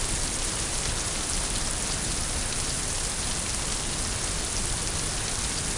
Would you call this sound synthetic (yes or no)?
no